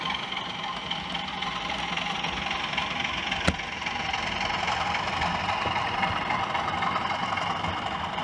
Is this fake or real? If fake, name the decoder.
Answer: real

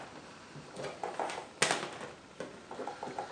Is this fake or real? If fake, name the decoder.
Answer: real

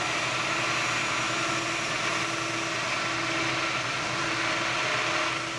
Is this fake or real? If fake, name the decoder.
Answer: real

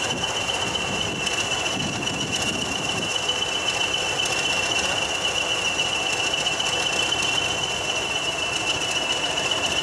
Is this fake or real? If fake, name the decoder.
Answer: real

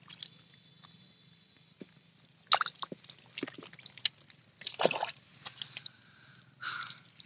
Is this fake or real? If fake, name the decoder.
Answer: real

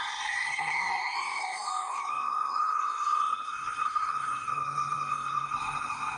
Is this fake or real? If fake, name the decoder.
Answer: fake, codec, SNAC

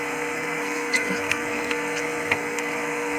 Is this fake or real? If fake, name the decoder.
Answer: fake, codec, SNAC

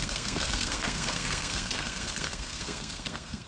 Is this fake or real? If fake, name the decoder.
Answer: fake, codec, SNAC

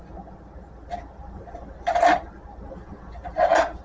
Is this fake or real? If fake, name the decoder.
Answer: real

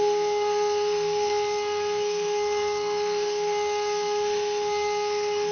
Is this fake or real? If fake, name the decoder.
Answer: fake, codec, SNAC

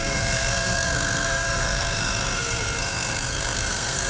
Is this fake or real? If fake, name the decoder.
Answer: fake, codec, SNAC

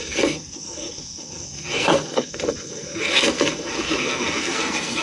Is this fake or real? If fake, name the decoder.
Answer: fake, codec, SNAC